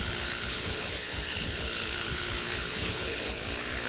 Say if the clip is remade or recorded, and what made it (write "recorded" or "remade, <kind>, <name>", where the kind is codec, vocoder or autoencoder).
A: remade, codec, HILCodec